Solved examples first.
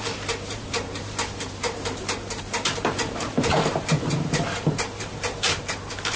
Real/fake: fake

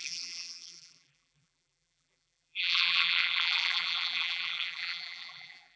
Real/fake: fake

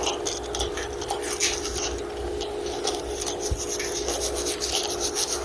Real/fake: real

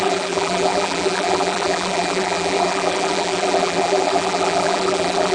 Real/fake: fake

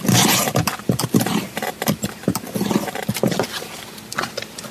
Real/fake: real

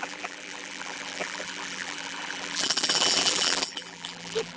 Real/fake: fake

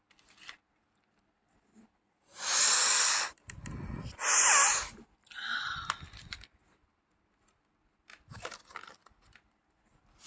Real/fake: real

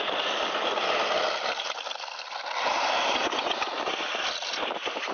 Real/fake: fake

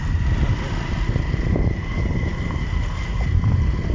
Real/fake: real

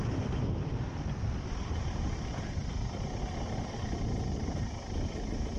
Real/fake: fake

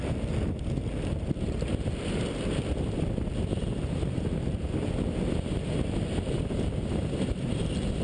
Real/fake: real